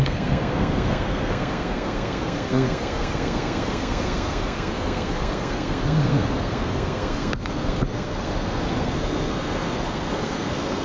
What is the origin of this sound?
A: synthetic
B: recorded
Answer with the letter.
A